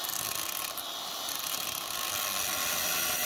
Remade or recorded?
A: recorded